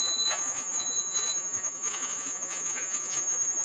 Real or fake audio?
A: fake